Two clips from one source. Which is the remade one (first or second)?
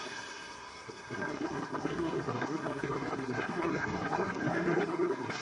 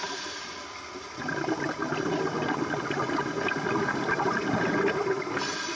first